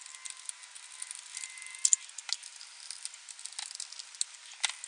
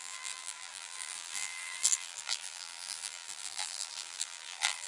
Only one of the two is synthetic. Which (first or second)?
second